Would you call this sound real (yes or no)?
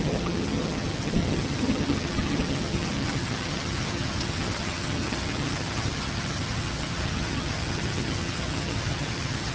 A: no